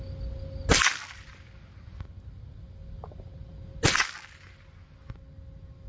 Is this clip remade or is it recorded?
recorded